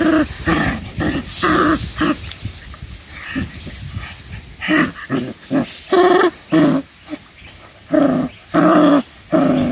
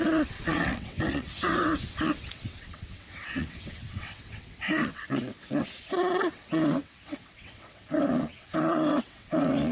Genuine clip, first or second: first